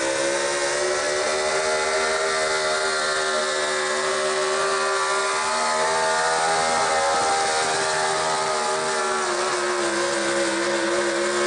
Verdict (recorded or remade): recorded